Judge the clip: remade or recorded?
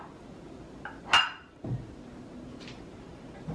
recorded